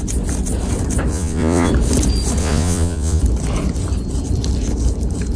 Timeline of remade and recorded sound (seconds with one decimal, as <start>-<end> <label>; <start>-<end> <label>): 0.0-1.1 recorded; 1.1-1.7 remade; 1.7-2.4 recorded; 2.4-3.2 remade; 3.2-5.4 recorded